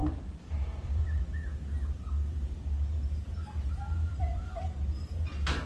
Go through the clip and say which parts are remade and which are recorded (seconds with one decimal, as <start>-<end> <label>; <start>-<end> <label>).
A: 0.0-1.2 remade; 1.2-4.0 recorded; 4.0-4.6 remade; 4.6-5.7 recorded